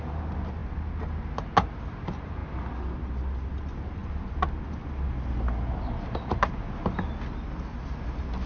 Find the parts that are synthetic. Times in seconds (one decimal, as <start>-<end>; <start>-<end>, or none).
none